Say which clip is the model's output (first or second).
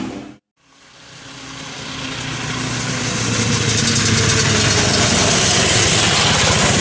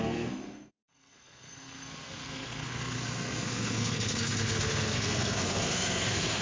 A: second